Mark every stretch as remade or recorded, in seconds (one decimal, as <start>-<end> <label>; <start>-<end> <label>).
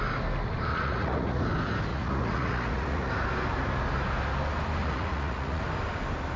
0.0-0.7 recorded; 0.7-1.4 remade; 1.4-1.9 recorded; 1.9-3.1 remade; 3.1-4.8 recorded; 4.8-5.6 remade; 5.6-6.4 recorded